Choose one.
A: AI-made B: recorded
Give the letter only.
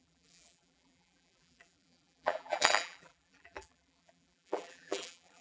A